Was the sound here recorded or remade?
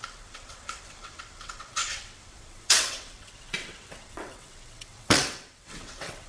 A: remade